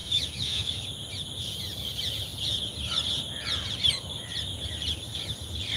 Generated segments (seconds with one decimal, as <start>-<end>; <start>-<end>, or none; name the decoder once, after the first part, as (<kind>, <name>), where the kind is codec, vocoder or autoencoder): 0.0-0.7 (autoencoder, DAC-VAE)